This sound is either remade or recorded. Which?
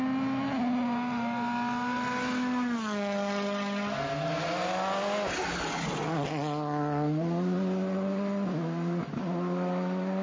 recorded